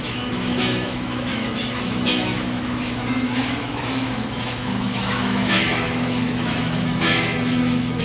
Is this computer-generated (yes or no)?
yes